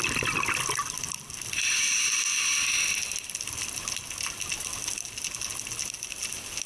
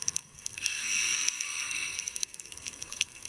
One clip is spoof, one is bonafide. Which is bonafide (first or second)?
first